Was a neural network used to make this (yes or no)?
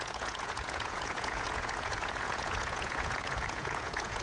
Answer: yes